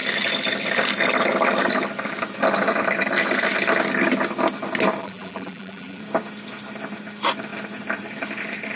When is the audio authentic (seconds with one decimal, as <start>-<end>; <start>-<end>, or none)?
0.0-5.0; 6.0-8.8